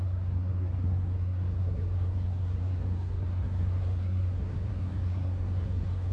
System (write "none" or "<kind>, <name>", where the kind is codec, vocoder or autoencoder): codec, SNAC